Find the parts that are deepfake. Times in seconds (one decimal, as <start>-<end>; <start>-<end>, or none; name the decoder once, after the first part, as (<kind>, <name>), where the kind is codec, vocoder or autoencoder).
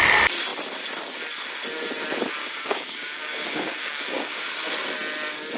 2.4-4.4 (codec, DAC)